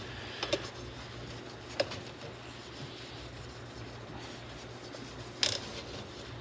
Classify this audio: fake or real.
real